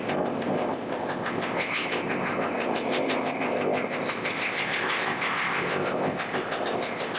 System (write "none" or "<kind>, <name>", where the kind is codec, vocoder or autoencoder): codec, ZipCodec